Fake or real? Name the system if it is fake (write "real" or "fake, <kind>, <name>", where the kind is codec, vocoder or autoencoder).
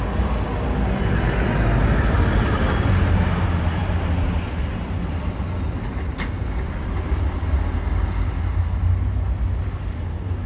real